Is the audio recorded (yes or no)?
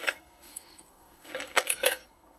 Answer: no